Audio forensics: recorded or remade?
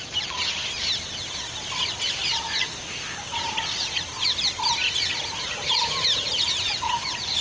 recorded